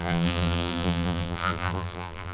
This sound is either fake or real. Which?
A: fake